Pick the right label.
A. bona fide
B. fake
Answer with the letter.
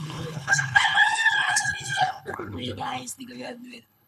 B